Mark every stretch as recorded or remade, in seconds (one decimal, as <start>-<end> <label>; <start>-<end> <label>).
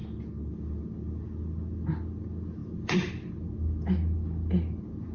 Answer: 0.0-2.6 recorded; 2.6-3.1 remade; 3.1-5.1 recorded